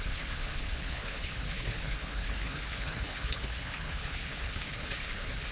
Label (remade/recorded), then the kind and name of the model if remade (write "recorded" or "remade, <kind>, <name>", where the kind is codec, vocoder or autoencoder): remade, codec, HILCodec